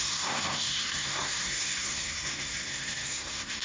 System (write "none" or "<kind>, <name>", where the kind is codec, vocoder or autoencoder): codec, SNAC